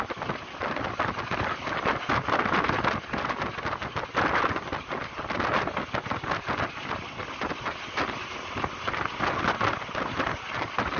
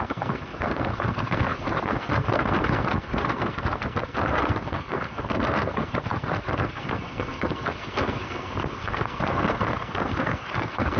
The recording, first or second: first